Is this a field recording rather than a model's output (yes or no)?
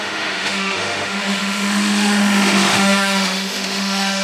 no